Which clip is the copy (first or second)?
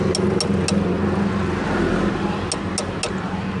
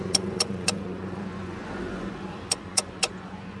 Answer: second